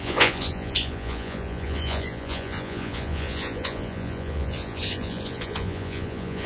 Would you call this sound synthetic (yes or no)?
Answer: yes